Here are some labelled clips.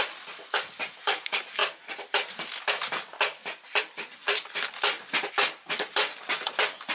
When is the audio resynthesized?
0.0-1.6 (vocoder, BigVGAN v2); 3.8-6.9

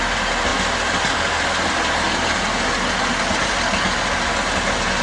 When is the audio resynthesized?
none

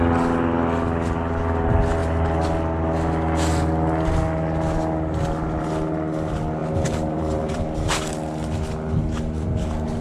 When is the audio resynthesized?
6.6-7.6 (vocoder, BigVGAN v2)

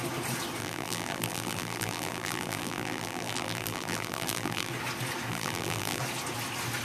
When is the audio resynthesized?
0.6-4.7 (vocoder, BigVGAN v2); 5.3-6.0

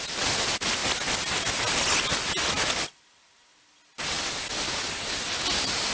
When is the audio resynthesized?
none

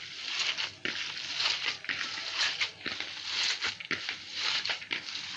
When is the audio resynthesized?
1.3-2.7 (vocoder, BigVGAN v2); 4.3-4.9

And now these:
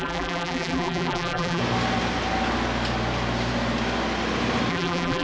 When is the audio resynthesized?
0.0-1.6 (vocoder, BigVGAN v2); 4.7-5.2

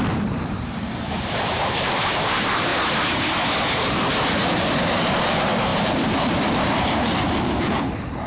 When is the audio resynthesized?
0.0-2.7 (vocoder, BigVGAN v2); 4.3-8.3